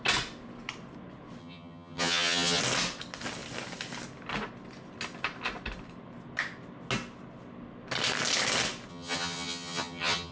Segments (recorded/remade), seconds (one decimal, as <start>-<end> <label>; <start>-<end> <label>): 0.0-1.4 recorded; 1.4-2.6 remade; 2.6-8.9 recorded; 8.9-10.3 remade